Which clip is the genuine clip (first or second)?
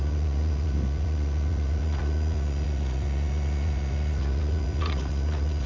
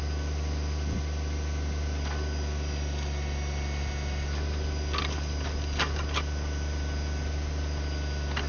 second